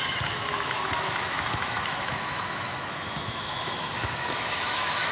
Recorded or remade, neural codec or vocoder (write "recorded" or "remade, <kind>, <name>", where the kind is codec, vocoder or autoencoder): remade, autoencoder, DAC-VAE